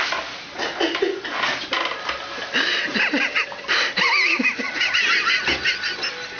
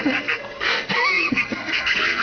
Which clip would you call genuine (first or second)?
first